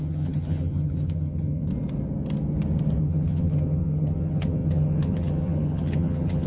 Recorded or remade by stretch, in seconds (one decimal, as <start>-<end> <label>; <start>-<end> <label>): 0.0-1.7 remade; 1.7-3.0 recorded; 3.0-6.5 remade